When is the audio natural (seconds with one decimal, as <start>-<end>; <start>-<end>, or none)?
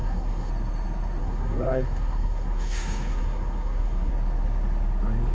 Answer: 0.5-1.2; 4.1-5.3